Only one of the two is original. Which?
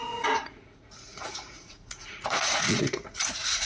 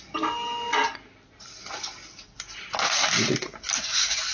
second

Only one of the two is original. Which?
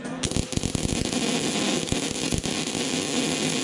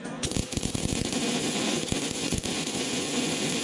first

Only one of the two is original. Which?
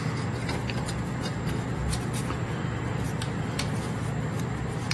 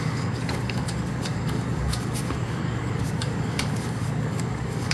first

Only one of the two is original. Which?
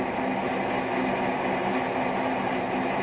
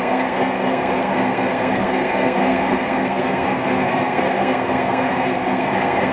first